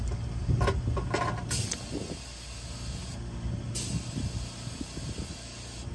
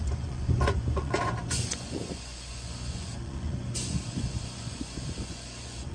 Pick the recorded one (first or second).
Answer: first